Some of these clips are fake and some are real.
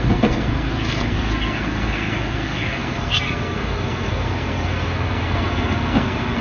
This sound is fake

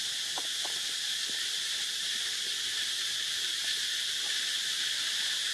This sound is real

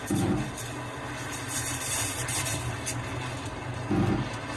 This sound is real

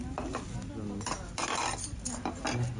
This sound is real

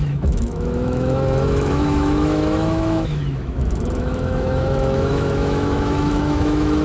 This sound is fake